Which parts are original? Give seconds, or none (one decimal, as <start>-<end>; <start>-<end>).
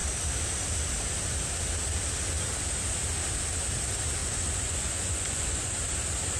0.0-4.2; 5.8-6.4